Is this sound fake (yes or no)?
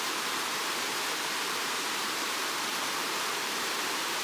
yes